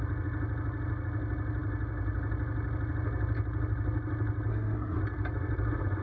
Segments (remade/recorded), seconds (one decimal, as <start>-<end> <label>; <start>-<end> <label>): 0.0-4.5 recorded; 4.5-5.0 remade; 5.0-6.0 recorded